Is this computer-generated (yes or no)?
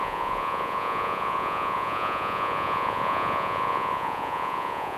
yes